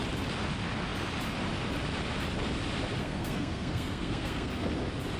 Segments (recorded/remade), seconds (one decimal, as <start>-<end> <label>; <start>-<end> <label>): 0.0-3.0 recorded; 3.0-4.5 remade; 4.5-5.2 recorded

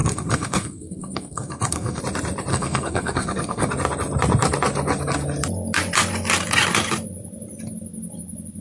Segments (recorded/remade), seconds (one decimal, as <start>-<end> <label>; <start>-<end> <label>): 0.0-2.0 remade; 2.0-2.5 recorded; 2.5-3.7 remade; 3.7-8.6 recorded

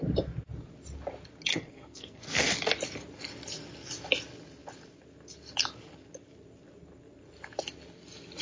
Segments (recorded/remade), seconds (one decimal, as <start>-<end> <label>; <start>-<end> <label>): 0.0-1.5 recorded; 1.5-2.5 remade; 2.5-8.4 recorded

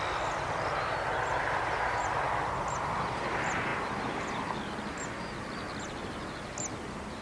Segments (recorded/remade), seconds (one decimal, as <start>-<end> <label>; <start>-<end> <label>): 0.0-7.2 recorded